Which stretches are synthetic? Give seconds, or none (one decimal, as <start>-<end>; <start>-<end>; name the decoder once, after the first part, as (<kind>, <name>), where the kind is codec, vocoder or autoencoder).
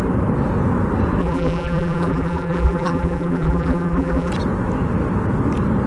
1.2-4.3 (vocoder, BigVGAN v2)